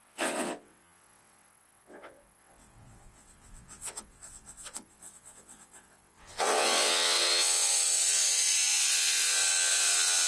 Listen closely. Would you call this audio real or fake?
fake